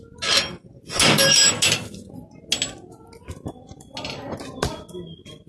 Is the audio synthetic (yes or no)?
no